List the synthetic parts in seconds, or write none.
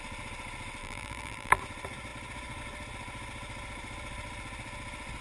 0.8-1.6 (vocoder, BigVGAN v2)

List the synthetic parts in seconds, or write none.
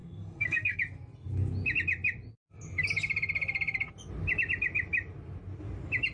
0.0-0.8 (codec, SNAC)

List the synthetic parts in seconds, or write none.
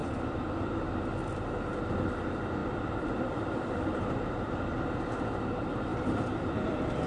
0.0-0.8 (vocoder, BigVGAN v2); 2.6-4.5; 5.9-7.1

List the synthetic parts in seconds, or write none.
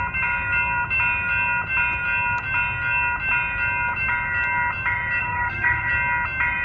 5.2-5.9 (codec, SNAC)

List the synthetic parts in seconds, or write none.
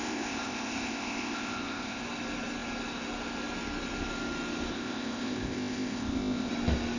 0.0-2.0 (codec, ZipCodec); 4.7-6.5